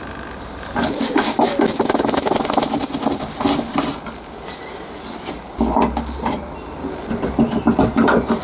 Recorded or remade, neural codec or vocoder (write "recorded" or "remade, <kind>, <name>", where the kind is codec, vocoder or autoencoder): recorded